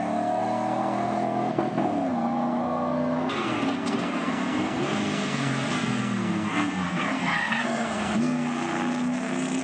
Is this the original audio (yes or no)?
no